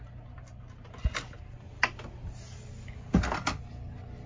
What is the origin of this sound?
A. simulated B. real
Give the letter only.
B